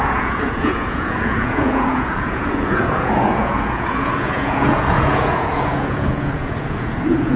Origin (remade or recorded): remade